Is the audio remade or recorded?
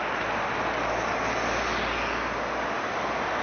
recorded